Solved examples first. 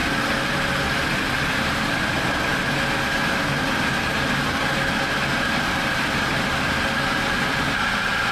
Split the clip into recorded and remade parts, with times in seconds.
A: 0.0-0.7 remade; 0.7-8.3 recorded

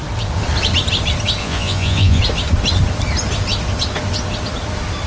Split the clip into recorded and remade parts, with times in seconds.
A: 0.0-1.4 recorded; 1.4-2.2 remade; 2.2-5.1 recorded

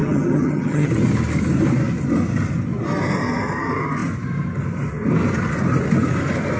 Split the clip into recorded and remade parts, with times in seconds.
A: 0.0-0.9 remade; 0.9-6.6 recorded

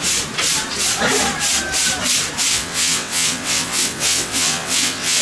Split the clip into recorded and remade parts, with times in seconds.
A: 0.0-2.5 recorded; 2.5-5.2 remade

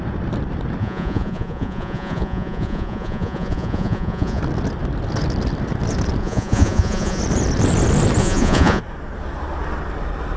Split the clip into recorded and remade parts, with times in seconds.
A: 0.0-0.8 recorded; 0.8-4.4 remade; 4.4-6.2 recorded; 6.2-7.2 remade; 7.2-8.2 recorded; 8.2-8.8 remade; 8.8-10.4 recorded

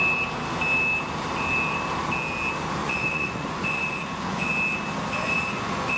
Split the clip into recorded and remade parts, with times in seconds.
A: 0.0-2.8 recorded; 2.8-4.5 remade; 4.5-5.2 recorded; 5.2-6.0 remade

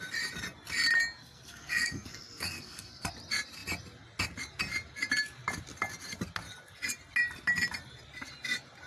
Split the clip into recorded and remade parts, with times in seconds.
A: 0.0-1.2 recorded; 1.2-3.1 remade; 3.1-8.9 recorded

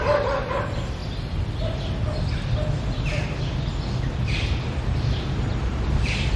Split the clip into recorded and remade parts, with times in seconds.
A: 0.0-6.4 recorded